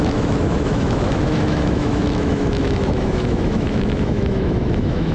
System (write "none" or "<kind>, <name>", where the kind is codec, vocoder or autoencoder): autoencoder, DAC-VAE